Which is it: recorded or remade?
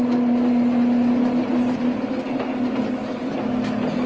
recorded